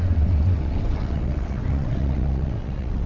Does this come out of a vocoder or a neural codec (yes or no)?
yes